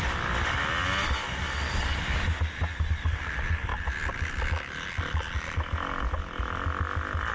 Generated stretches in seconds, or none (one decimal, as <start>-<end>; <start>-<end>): none